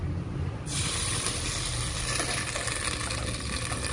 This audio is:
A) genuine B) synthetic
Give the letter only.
A